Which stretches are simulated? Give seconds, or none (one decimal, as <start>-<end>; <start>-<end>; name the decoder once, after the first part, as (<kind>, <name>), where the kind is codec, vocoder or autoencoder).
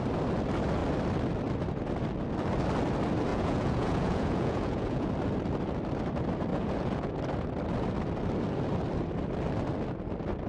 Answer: 3.3-5.1 (vocoder, Vocos); 6.5-7.1